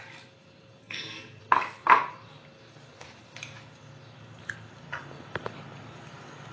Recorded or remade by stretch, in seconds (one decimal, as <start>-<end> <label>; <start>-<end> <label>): 0.0-0.8 recorded; 0.8-1.4 remade; 1.4-6.5 recorded